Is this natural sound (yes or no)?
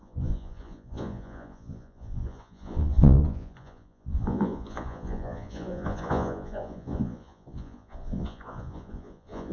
no